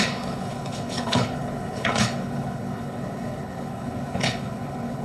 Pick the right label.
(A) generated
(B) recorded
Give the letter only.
A